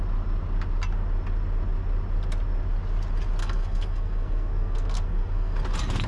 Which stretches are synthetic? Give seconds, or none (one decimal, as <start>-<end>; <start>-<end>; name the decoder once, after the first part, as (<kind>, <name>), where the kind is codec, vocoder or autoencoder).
3.4-5.6 (codec, SNAC)